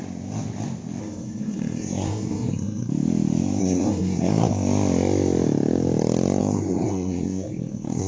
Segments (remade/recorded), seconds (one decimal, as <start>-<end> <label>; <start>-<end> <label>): 0.0-1.0 recorded; 1.0-2.9 remade; 2.9-3.6 recorded; 3.6-4.5 remade; 4.5-6.4 recorded; 6.4-8.1 remade